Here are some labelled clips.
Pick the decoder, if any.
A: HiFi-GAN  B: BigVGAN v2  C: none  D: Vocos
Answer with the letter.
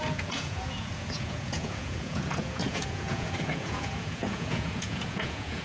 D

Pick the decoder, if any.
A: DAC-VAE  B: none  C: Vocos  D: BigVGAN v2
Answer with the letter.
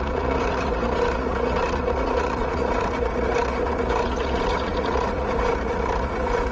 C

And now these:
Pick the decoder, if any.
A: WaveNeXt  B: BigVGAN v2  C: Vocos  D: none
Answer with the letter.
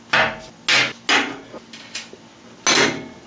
D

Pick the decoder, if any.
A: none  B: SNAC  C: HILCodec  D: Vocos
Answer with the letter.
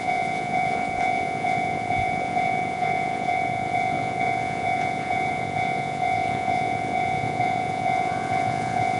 D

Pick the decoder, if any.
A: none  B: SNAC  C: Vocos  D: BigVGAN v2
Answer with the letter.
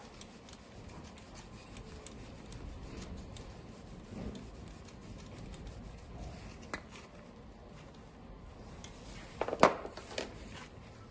A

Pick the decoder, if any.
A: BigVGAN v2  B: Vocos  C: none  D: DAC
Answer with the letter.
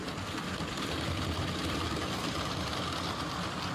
C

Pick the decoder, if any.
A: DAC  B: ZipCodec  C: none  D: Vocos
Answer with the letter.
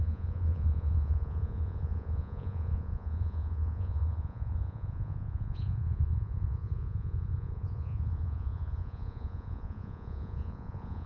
D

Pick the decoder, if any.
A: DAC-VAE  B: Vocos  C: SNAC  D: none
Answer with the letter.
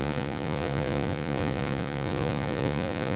B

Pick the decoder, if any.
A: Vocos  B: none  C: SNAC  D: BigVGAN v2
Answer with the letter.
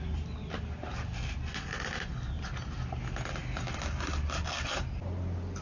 B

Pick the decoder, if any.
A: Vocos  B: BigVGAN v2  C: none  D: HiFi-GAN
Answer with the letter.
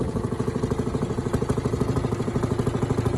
C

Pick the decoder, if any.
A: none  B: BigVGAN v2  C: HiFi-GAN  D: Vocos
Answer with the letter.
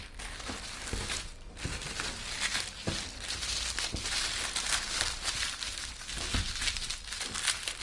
A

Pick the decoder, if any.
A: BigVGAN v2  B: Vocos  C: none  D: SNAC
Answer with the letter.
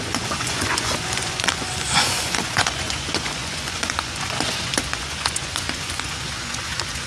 B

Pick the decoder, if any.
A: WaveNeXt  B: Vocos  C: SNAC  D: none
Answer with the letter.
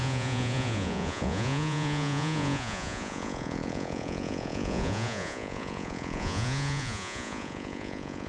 B